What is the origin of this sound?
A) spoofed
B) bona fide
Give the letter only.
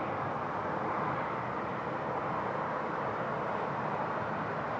B